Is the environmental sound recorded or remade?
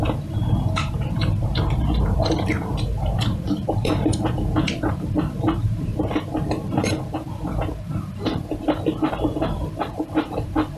remade